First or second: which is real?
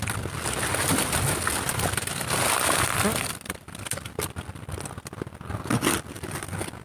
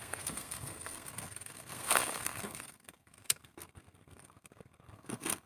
first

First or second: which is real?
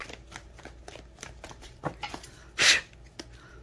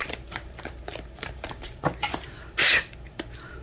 first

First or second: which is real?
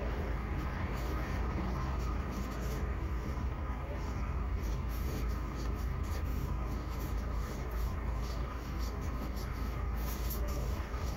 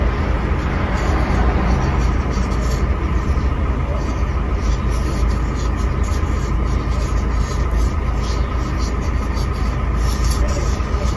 second